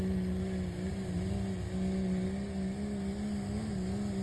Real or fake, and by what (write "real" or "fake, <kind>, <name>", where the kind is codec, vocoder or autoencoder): real